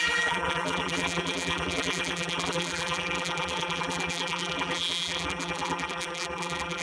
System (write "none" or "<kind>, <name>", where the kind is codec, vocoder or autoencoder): vocoder, BigVGAN v2